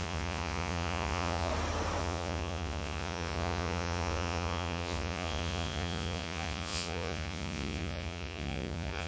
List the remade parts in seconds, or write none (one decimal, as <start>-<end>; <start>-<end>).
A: 0.0-1.5; 2.0-9.1